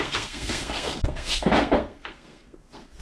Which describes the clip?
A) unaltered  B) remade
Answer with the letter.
B